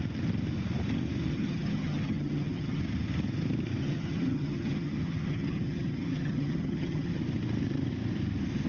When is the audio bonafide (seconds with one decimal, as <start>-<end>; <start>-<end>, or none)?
0.0-1.3; 2.8-3.8; 7.2-8.7